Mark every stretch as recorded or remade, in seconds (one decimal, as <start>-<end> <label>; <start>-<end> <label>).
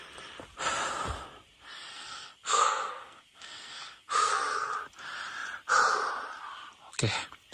0.0-1.9 recorded; 1.9-4.7 remade; 4.7-7.5 recorded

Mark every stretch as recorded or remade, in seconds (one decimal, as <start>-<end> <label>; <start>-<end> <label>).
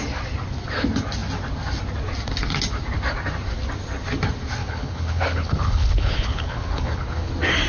0.0-4.6 recorded; 4.6-7.3 remade; 7.3-7.7 recorded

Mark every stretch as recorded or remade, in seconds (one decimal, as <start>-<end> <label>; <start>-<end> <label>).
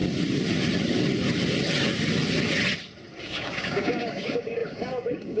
0.0-3.2 recorded; 3.2-5.4 remade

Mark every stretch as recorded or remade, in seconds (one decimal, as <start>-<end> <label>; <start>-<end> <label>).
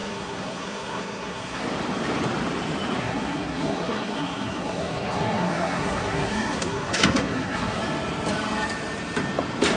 0.0-1.6 remade; 1.6-3.0 recorded; 3.0-7.8 remade; 7.8-9.8 recorded